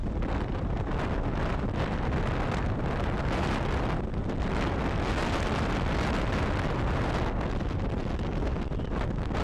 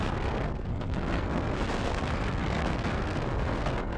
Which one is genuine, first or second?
first